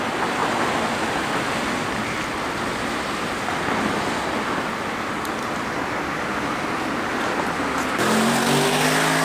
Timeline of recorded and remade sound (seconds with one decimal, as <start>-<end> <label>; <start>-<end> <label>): 0.0-0.4 recorded; 0.4-2.0 remade; 2.0-9.2 recorded